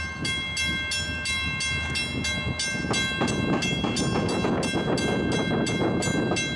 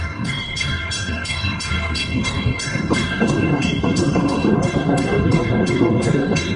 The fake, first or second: second